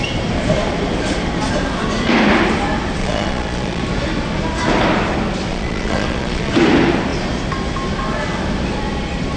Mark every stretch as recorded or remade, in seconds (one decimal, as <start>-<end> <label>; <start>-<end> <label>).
0.0-3.0 recorded; 3.0-3.8 remade; 3.8-5.5 recorded; 5.5-6.5 remade; 6.5-9.4 recorded